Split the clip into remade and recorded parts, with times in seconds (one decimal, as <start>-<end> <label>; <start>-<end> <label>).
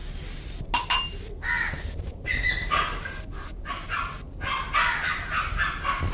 0.0-6.1 recorded